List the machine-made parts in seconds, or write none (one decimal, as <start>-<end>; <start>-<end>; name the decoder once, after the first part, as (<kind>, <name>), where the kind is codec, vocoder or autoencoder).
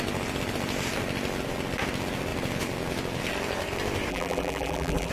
4.1-5.1 (vocoder, BigVGAN v2)